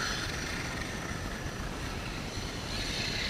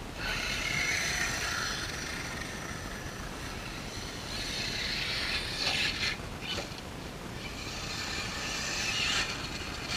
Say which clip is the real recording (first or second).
second